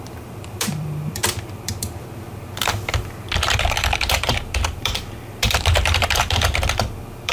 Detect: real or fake fake